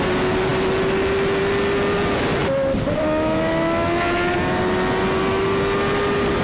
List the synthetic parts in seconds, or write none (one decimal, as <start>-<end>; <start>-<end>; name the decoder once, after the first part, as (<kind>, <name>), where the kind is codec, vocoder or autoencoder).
none